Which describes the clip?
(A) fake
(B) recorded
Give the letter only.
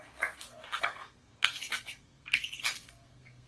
A